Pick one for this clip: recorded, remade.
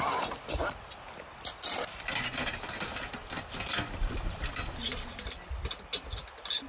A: recorded